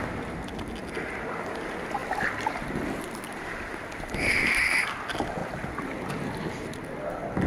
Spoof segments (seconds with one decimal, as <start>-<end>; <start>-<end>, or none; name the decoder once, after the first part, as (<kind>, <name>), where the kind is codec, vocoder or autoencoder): none